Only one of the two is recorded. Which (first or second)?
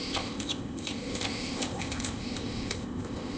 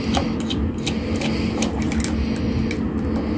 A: second